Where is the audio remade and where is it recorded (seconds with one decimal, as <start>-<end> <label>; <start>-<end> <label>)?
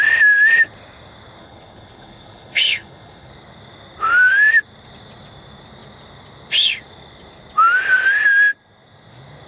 0.0-1.4 recorded; 1.4-3.3 remade; 3.3-9.5 recorded